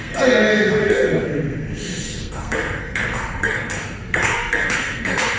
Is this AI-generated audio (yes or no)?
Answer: yes